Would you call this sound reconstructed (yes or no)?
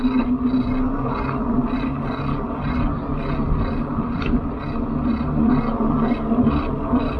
no